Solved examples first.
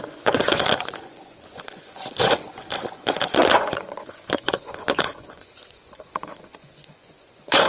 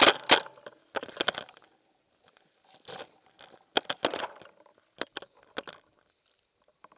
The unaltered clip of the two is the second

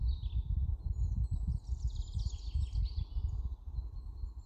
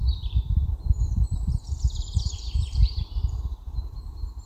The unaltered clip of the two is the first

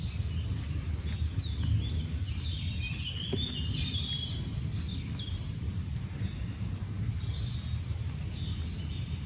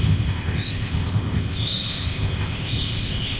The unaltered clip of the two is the first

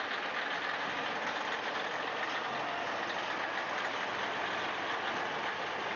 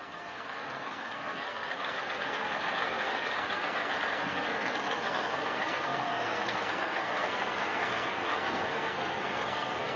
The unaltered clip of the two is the first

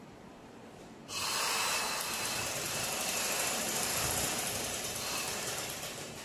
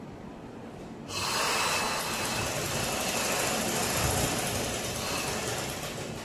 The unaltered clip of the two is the second